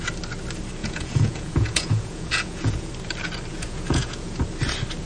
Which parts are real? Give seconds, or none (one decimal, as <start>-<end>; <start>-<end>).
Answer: 0.0-0.8; 2.9-3.5; 4.4-5.1